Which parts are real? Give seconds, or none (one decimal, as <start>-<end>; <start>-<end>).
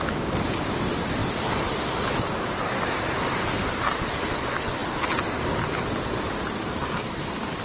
0.0-7.6